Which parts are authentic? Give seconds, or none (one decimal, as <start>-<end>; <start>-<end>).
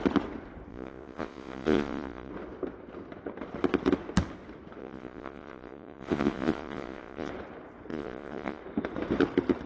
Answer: 0.0-0.7; 2.3-4.8; 7.3-7.9; 8.6-9.7